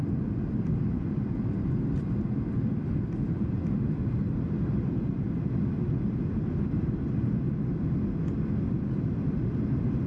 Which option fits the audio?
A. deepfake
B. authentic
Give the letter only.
B